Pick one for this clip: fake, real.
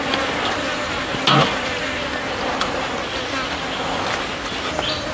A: real